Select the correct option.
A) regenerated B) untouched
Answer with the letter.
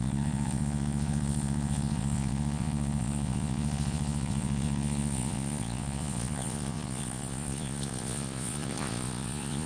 A